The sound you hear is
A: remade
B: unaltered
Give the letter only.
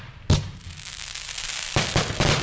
B